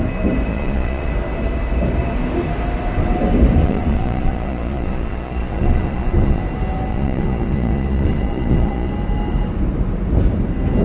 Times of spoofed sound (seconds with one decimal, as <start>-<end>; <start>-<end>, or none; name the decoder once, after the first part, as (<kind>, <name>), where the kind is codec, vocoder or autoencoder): 0.5-1.1 (vocoder, Vocos); 3.6-6.4; 6.9-8.9

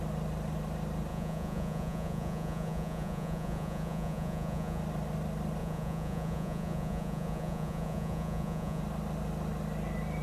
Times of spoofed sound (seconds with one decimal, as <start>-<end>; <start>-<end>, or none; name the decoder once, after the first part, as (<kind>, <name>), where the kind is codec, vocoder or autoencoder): 1.1-4.8 (vocoder, Vocos); 5.6-8.8

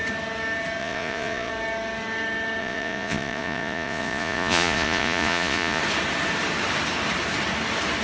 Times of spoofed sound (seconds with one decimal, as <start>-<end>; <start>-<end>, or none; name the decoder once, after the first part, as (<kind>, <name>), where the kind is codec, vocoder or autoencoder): 0.8-1.5 (vocoder, Vocos); 2.6-5.8

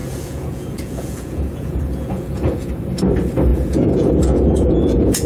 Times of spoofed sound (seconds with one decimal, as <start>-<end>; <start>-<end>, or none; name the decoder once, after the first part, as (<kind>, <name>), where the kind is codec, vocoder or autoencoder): 0.0-2.7 (vocoder, Vocos); 3.5-5.3

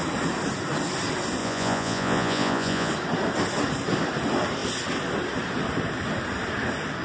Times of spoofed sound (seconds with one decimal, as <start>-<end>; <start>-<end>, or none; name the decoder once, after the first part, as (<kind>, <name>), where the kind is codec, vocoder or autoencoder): 1.4-2.9 (vocoder, Vocos)

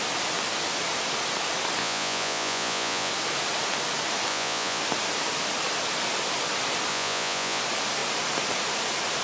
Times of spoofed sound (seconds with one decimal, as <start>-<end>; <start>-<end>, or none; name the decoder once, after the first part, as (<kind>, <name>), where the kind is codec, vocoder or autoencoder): 1.8-3.1 (vocoder, Vocos); 4.3-4.8; 6.9-7.6

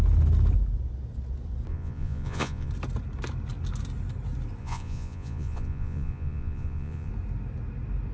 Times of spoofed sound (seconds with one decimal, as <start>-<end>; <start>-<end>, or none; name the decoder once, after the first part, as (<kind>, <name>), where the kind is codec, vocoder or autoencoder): 1.7-2.7 (vocoder, Vocos); 4.6-7.1

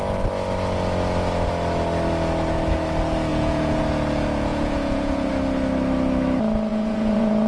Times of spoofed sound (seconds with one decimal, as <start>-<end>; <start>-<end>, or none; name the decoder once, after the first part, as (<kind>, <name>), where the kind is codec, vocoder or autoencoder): 3.3-3.8 (vocoder, Vocos); 4.5-5.3; 6.7-7.5